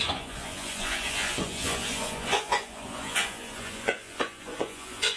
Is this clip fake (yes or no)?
yes